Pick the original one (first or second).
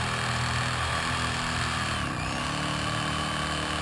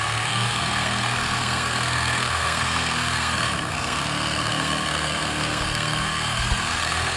first